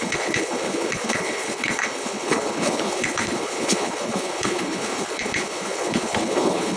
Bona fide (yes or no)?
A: no